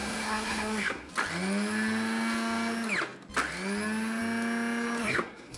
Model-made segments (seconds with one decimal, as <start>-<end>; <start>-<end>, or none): 0.0-1.1; 5.0-5.6